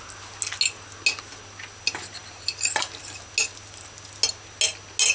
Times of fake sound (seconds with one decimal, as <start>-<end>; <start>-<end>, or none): none